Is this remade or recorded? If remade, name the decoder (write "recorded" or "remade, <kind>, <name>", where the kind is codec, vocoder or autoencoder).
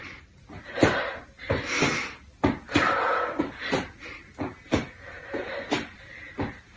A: recorded